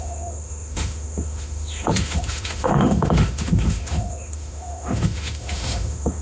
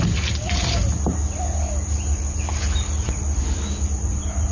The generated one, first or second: first